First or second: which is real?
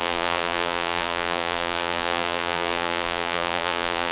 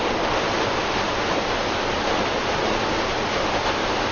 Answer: second